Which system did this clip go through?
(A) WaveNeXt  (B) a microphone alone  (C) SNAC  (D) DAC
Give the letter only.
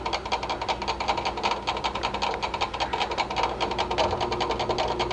B